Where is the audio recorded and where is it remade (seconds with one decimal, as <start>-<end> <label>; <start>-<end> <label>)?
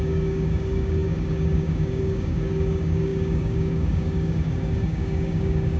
0.0-5.8 remade